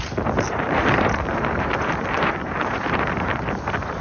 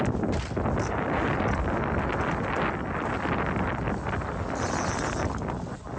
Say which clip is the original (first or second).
second